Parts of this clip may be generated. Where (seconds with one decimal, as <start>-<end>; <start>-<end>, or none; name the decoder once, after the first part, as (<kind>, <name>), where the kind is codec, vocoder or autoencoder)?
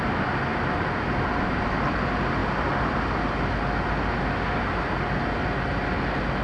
none